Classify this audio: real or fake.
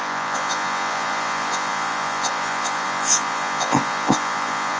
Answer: fake